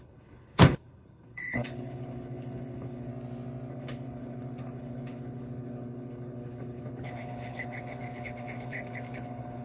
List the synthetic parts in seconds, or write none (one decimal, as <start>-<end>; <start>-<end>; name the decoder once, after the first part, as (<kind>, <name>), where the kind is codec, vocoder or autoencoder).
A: 0.0-3.1 (codec, HILCodec); 3.7-9.6